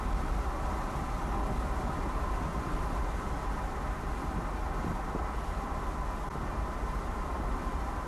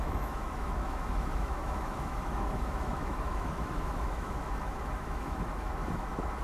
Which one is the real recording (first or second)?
first